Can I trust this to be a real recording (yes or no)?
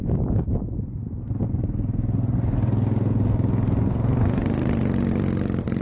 yes